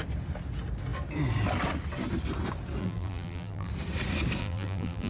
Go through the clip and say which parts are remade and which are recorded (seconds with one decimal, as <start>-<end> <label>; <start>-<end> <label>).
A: 0.0-2.8 recorded; 2.8-3.7 remade; 3.7-4.4 recorded; 4.4-5.1 remade